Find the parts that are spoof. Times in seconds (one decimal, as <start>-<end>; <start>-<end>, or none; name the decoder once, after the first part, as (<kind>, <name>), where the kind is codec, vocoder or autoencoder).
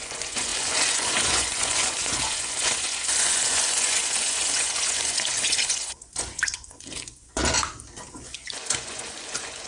0.0-7.4 (vocoder, Vocos); 8.1-9.7